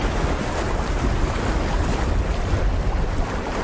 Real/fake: real